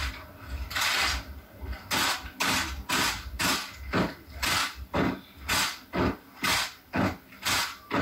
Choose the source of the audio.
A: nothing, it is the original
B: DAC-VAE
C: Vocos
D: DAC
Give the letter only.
A